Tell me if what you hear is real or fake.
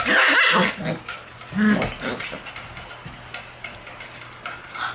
real